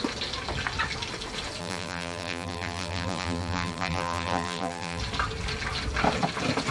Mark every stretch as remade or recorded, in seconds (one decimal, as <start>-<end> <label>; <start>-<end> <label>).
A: 0.0-1.6 recorded; 1.6-5.0 remade; 5.0-6.7 recorded